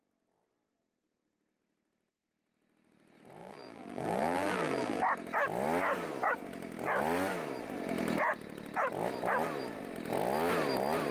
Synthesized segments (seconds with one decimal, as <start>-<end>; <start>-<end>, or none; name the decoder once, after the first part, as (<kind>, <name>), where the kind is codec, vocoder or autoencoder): 3.4-5.0 (vocoder, BigVGAN v2)